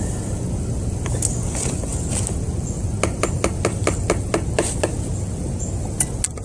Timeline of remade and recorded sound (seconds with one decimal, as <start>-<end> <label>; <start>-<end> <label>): 0.0-6.4 recorded